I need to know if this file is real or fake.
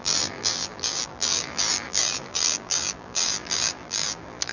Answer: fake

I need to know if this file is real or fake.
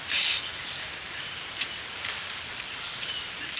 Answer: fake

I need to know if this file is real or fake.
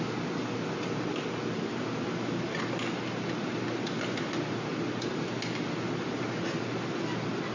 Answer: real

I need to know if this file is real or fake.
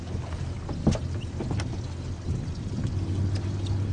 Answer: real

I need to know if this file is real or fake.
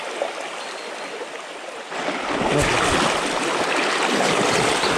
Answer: real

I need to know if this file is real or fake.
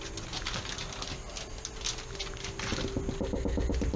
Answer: real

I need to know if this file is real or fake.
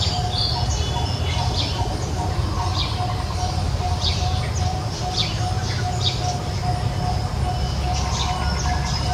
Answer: real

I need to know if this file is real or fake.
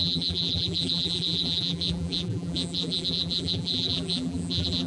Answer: fake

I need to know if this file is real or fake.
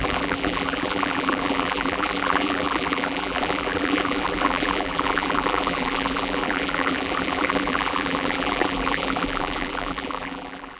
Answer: fake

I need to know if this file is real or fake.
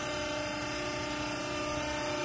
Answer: real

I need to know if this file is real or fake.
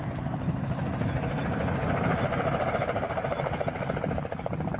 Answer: fake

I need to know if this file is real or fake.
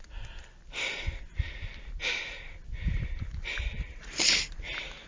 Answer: real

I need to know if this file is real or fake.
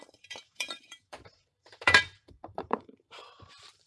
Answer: fake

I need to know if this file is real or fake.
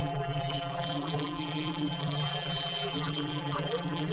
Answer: fake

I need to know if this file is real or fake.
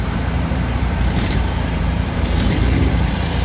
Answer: fake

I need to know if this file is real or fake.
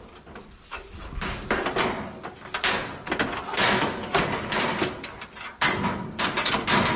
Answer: real